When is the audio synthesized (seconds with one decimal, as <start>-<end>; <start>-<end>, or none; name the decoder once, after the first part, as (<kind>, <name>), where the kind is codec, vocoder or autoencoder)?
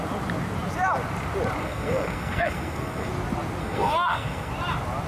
1.6-3.1 (codec, SNAC); 3.6-4.5